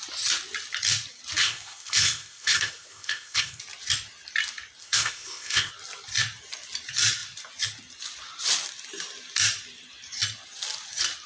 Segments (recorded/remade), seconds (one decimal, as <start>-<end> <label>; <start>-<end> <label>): 0.0-1.4 recorded; 1.4-3.6 remade; 3.6-4.8 recorded; 4.8-5.7 remade; 5.7-11.3 recorded